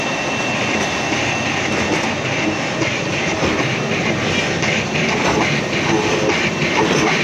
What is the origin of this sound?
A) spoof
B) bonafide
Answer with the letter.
B